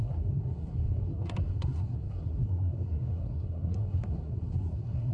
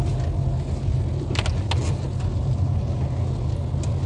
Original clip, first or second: second